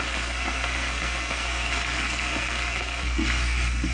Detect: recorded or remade remade